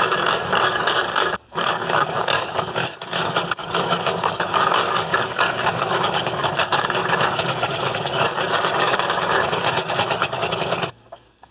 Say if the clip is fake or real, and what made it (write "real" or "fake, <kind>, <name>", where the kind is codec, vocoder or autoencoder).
fake, codec, DAC